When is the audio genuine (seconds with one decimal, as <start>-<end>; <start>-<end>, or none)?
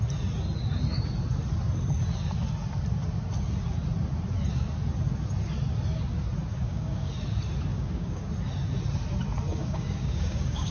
0.0-6.5; 7.1-7.7; 8.3-9.5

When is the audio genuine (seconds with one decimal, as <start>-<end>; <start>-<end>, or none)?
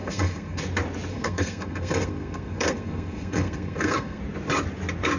0.6-1.1; 4.2-5.2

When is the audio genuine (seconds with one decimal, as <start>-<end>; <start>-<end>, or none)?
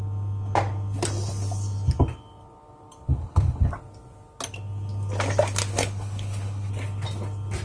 0.0-3.1; 3.7-5.7; 6.7-7.6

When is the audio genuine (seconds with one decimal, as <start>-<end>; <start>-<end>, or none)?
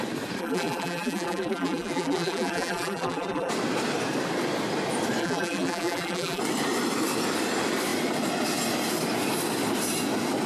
0.0-0.4; 3.5-5.2; 6.4-10.5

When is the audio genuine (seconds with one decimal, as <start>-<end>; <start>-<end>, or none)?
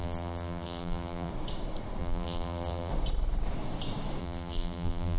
1.3-2.0; 2.9-4.2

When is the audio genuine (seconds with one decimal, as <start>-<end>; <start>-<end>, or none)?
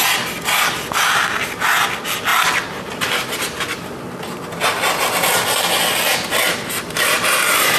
0.0-7.8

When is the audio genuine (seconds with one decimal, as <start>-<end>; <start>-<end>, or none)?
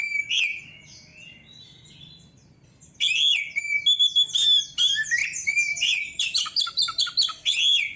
0.0-5.2; 7.0-8.0